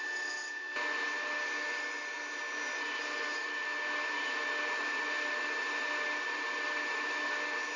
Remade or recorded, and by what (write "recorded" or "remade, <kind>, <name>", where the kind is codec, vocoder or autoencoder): recorded